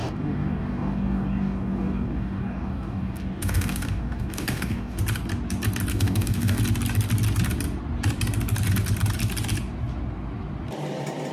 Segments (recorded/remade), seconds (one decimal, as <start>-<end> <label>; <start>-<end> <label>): 0.0-5.0 remade; 5.0-5.9 recorded; 5.9-6.6 remade; 6.6-11.3 recorded

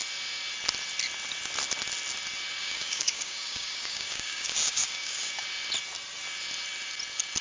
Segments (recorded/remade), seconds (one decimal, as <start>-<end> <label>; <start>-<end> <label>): 0.0-2.6 recorded; 2.6-5.3 remade; 5.3-7.4 recorded

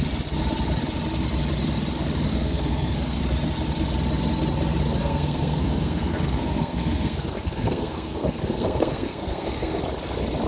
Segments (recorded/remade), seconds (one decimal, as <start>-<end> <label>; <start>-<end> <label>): 0.0-2.3 recorded; 2.3-3.2 remade; 3.2-5.0 recorded; 5.0-9.8 remade; 9.8-10.5 recorded

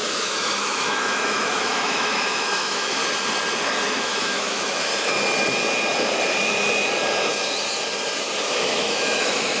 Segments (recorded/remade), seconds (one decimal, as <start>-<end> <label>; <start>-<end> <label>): 0.0-3.0 remade; 3.0-4.0 recorded; 4.0-4.9 remade; 4.9-8.4 recorded; 8.4-9.6 remade

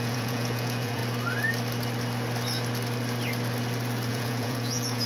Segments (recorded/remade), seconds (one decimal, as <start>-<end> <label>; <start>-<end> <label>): 0.0-1.0 remade; 1.0-4.1 recorded; 4.1-5.1 remade

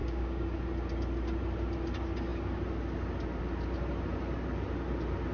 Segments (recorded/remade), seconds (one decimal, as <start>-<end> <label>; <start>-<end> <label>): 0.0-0.6 remade; 0.6-5.3 recorded